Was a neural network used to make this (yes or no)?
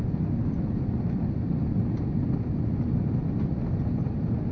no